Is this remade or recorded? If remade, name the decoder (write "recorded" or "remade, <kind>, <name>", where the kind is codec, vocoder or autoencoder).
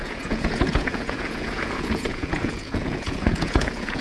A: remade, vocoder, Vocos